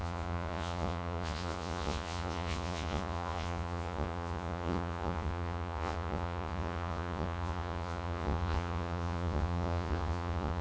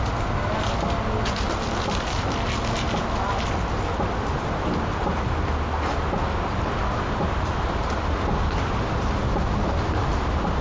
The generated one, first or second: first